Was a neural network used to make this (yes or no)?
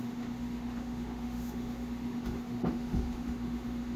yes